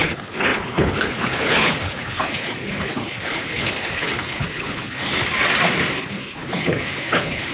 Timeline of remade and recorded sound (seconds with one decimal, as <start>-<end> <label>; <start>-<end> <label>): 0.0-5.1 remade; 5.1-5.9 recorded; 5.9-7.5 remade